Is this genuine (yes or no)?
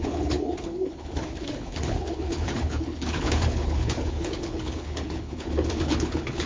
no